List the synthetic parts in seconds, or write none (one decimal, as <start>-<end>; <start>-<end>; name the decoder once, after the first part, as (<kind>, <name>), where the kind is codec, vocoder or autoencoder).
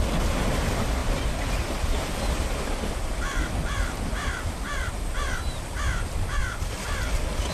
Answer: none